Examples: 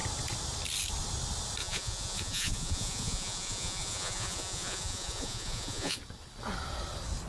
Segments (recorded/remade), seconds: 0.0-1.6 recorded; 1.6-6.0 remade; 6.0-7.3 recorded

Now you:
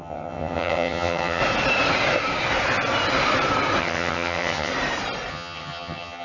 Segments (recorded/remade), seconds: 0.0-1.4 remade; 1.4-3.8 recorded; 3.8-4.7 remade; 4.7-5.3 recorded; 5.3-6.2 remade

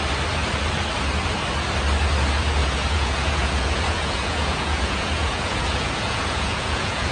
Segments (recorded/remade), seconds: 0.0-2.6 recorded; 2.6-7.1 remade

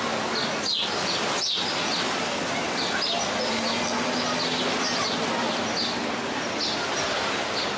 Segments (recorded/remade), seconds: 0.0-7.8 recorded

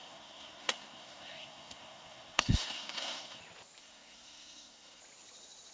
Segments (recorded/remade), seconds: 0.0-3.4 remade; 3.4-3.8 recorded; 3.8-5.0 remade; 5.0-5.7 recorded

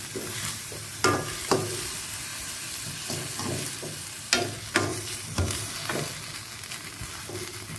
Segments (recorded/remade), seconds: 0.0-4.9 recorded; 4.9-5.7 remade; 5.7-7.8 recorded

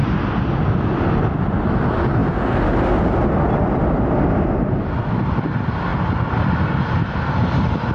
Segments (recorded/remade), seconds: 0.0-7.9 recorded